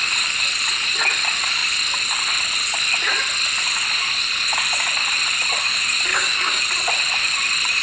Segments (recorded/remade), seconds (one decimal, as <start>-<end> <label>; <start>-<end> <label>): 0.0-6.1 recorded; 6.1-6.6 remade; 6.6-7.8 recorded